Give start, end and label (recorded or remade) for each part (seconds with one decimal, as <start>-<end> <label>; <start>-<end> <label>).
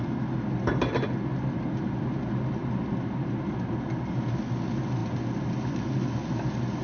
0.0-6.8 recorded